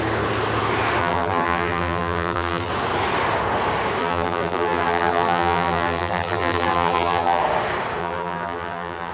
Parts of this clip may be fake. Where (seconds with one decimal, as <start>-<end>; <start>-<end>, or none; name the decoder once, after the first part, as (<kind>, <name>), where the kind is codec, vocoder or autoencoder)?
1.0-2.7 (vocoder, BigVGAN v2); 4.0-7.4; 8.0-9.1

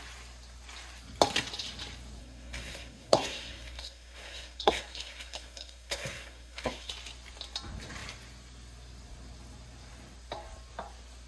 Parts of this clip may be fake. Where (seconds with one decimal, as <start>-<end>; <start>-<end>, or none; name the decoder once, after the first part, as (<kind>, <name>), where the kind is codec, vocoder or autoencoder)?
2.2-6.9 (codec, SNAC)

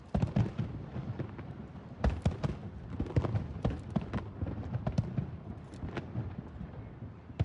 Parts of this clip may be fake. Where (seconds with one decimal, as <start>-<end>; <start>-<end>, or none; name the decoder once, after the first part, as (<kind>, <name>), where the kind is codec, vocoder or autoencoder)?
none